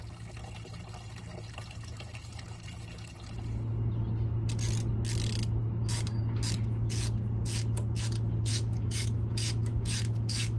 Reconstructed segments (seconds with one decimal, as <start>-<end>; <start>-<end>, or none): 8.5-10.6